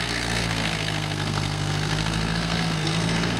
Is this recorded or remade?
remade